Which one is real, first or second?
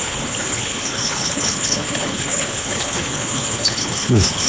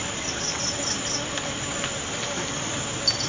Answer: second